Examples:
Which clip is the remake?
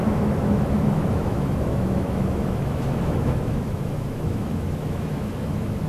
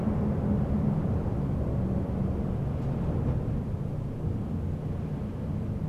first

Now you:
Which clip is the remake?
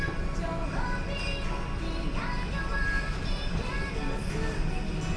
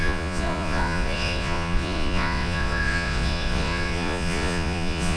second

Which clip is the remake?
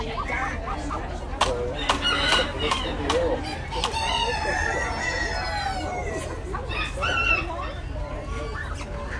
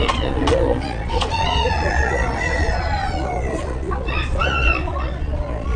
second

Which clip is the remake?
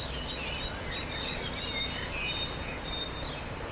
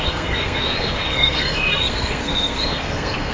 second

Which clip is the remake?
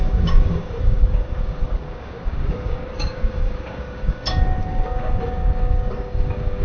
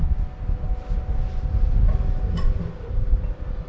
first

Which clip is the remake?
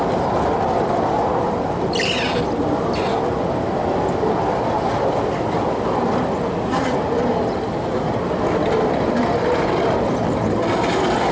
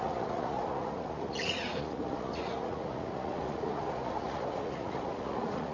second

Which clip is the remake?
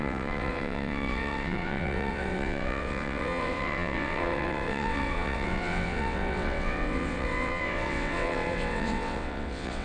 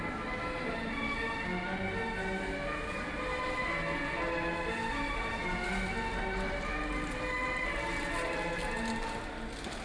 first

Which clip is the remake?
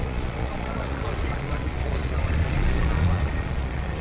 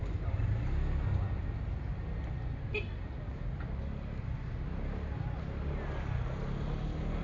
first